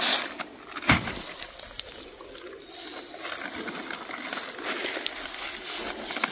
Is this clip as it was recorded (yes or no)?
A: yes